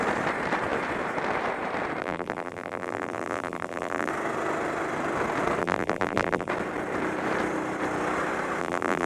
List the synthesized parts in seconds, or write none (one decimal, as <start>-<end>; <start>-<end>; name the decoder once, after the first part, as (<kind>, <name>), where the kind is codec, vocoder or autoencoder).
2.0-4.1 (vocoder, BigVGAN v2); 5.6-6.5; 8.6-9.1